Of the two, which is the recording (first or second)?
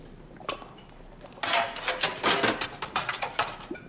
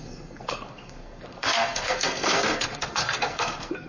first